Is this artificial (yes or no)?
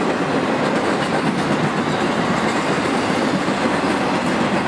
no